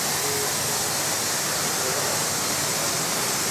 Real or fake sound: real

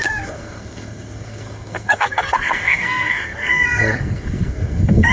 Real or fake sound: fake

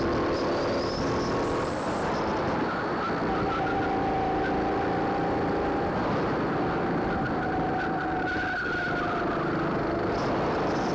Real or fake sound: real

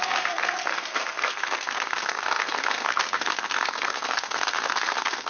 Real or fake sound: fake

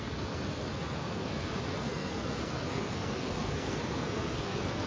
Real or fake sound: fake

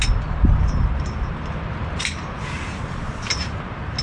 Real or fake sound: real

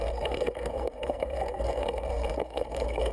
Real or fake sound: fake